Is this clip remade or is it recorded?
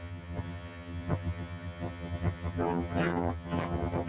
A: remade